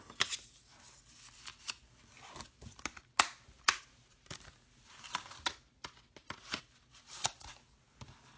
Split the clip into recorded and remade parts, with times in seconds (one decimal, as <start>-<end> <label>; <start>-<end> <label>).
0.0-8.4 recorded